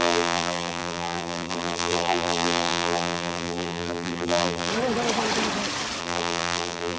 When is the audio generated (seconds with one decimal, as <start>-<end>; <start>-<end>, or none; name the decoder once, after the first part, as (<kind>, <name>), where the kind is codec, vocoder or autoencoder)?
0.0-4.7 (vocoder, BigVGAN v2); 6.0-7.0